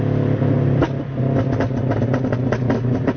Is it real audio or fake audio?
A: fake